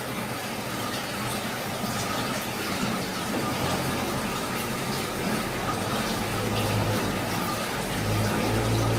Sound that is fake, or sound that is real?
real